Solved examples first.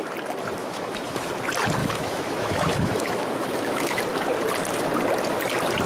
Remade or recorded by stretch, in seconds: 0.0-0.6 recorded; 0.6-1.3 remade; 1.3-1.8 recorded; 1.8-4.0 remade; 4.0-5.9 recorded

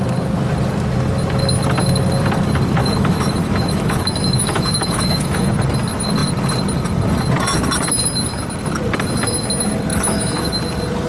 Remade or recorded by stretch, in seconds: 0.0-2.8 recorded; 2.8-5.5 remade; 5.5-9.9 recorded; 9.9-10.5 remade; 10.5-11.1 recorded

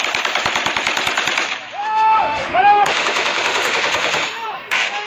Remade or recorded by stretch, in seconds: 0.0-1.8 recorded; 1.8-5.1 remade

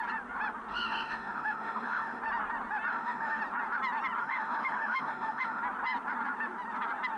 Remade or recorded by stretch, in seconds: 0.0-0.7 recorded; 0.7-2.2 remade; 2.2-2.9 recorded; 2.9-3.4 remade; 3.4-4.2 recorded; 4.2-5.6 remade; 5.6-7.2 recorded

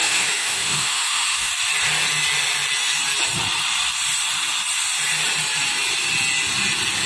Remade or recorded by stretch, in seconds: 0.0-1.5 remade; 1.5-7.1 recorded

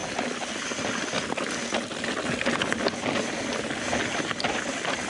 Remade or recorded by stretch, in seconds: 0.0-5.1 recorded

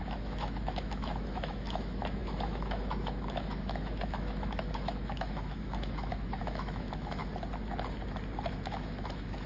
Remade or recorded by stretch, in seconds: 0.0-7.2 remade; 7.2-8.5 recorded; 8.5-9.5 remade